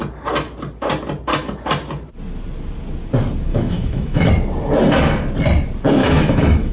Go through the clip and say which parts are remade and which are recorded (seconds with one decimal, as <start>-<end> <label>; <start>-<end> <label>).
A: 0.0-3.5 recorded; 3.5-4.3 remade; 4.3-6.0 recorded; 6.0-6.7 remade